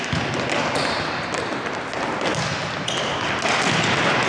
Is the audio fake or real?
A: real